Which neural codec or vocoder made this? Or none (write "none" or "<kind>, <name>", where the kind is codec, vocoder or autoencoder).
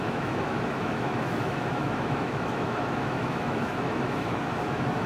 autoencoder, DAC-VAE